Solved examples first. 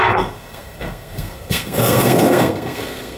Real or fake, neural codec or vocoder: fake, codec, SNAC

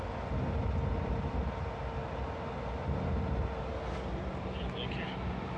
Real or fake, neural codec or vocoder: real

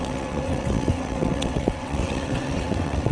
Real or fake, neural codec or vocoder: fake, vocoder, WaveNeXt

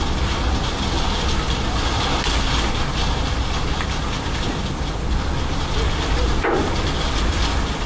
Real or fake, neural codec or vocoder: real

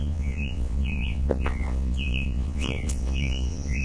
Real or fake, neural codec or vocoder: fake, vocoder, Vocos